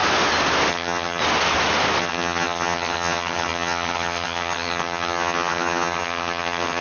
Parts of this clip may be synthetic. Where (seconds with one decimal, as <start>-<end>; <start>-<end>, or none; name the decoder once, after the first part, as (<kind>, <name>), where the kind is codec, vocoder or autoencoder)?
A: 0.7-1.2 (vocoder, HiFi-GAN); 2.0-6.8